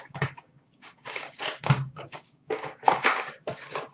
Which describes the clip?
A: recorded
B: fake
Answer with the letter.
B